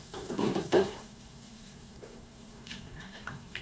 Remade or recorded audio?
remade